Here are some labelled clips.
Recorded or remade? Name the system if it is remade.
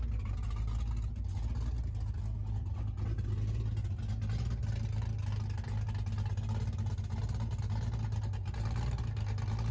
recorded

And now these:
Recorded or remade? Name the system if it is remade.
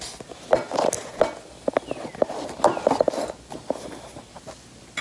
recorded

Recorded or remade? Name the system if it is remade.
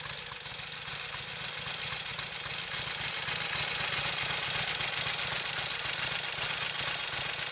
recorded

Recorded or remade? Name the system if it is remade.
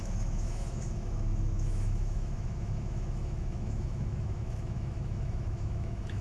remade, autoencoder, DAC-VAE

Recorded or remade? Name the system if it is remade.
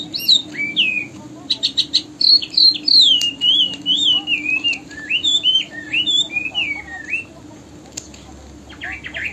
recorded